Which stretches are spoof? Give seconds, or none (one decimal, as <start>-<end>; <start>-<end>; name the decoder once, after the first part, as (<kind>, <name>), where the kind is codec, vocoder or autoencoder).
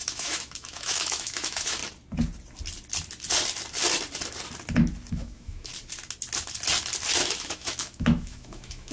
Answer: 0.0-1.8 (autoencoder, DAC-VAE); 5.1-5.7; 7.2-8.9